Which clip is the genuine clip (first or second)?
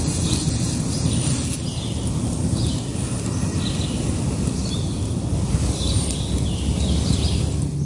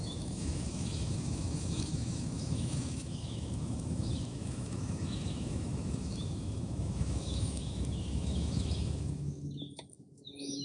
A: first